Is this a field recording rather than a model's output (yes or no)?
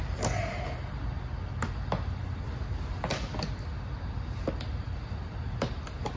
yes